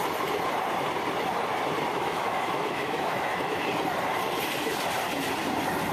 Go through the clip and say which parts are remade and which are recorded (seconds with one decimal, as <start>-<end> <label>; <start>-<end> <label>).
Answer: 0.0-1.9 recorded; 1.9-3.6 remade; 3.6-5.9 recorded